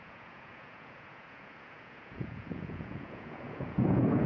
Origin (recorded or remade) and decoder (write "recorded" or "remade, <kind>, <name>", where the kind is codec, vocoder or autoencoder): remade, vocoder, Vocos